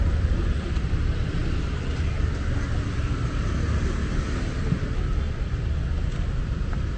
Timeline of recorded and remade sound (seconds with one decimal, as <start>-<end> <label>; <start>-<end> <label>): 0.0-7.0 recorded

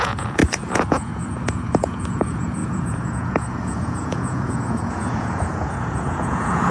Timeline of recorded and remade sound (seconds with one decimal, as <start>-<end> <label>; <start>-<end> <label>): 0.0-6.7 remade

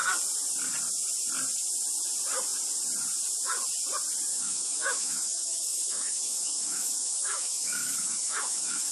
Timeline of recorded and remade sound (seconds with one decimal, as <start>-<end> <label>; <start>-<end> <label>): 0.0-4.3 recorded; 4.3-8.9 remade